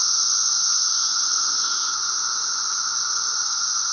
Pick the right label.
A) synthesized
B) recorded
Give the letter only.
A